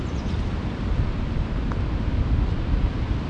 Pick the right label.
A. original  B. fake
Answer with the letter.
A